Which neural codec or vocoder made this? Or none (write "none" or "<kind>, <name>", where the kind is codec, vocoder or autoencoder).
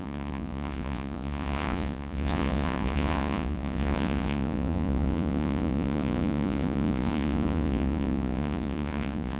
vocoder, Vocos